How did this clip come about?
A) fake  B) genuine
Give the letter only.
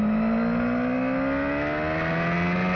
B